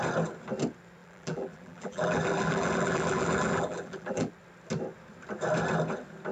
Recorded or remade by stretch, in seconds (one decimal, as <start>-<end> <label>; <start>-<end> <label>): 0.0-1.0 recorded; 1.0-4.3 remade; 4.3-6.3 recorded